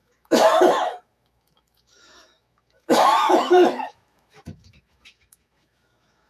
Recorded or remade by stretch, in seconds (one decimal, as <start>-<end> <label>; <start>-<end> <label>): 0.0-6.3 remade